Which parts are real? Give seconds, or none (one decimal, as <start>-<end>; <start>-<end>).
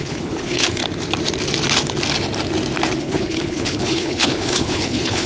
0.8-3.0